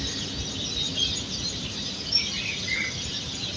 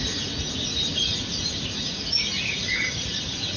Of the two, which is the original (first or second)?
first